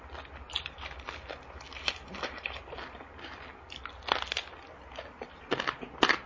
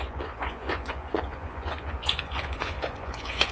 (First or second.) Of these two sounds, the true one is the first